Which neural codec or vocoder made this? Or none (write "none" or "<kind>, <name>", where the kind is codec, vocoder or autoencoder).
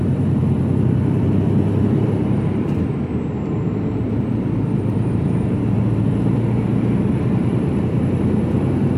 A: vocoder, BigVGAN v2